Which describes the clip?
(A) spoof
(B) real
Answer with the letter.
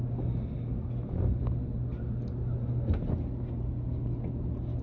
B